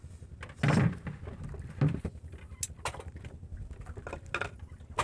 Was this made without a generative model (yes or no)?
yes